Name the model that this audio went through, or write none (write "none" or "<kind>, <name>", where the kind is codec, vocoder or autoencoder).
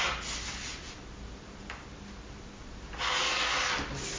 none